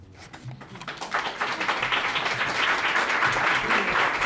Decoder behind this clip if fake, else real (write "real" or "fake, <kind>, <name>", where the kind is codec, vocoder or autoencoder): real